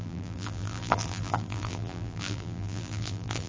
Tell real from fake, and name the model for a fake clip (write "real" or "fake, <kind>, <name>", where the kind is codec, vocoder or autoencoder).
fake, vocoder, BigVGAN v2